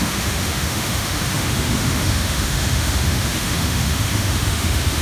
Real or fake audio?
fake